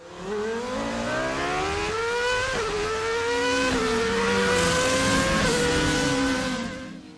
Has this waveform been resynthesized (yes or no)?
no